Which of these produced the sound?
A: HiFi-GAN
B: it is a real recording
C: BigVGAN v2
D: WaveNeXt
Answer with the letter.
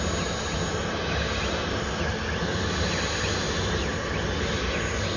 B